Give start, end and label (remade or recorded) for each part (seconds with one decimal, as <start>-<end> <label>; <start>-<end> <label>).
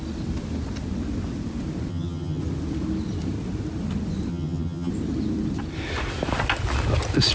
0.0-1.9 recorded; 1.9-2.4 remade; 2.4-4.3 recorded; 4.3-4.9 remade; 4.9-7.3 recorded